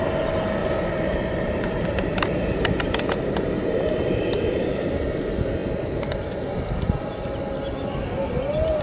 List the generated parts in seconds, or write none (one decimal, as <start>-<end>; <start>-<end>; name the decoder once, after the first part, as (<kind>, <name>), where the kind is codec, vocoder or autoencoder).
0.6-5.0 (vocoder, BigVGAN v2); 5.6-7.0